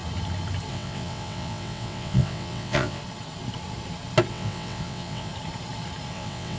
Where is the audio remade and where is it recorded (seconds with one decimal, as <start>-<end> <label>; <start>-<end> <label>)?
0.0-0.7 recorded; 0.7-3.0 remade; 3.0-4.3 recorded; 4.3-5.3 remade; 5.3-6.1 recorded; 6.1-6.6 remade